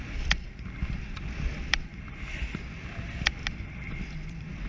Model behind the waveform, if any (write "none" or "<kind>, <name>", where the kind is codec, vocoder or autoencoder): none